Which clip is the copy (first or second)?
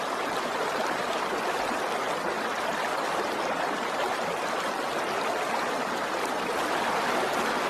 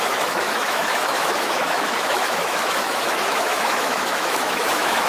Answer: second